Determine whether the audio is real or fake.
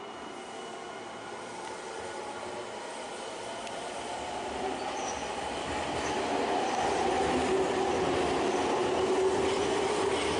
real